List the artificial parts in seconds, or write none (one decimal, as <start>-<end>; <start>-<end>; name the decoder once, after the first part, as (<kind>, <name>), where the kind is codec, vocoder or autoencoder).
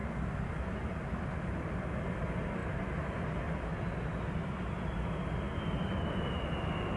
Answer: none